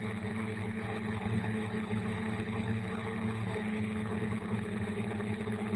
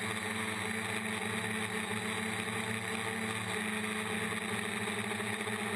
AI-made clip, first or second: first